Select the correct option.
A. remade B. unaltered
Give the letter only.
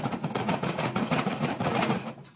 A